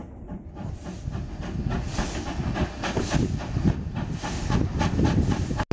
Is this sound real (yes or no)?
yes